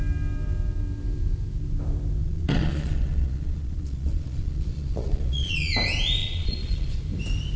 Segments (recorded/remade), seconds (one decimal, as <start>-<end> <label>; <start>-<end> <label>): 0.0-2.2 recorded; 2.2-5.7 remade; 5.7-6.2 recorded; 6.2-7.0 remade; 7.0-7.6 recorded